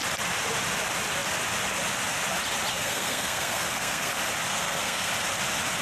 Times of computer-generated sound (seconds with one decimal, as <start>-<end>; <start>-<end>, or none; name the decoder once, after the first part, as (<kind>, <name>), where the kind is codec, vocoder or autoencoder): 2.7-4.1 (codec, SNAC); 4.5-5.1